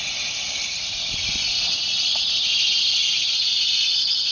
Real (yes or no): yes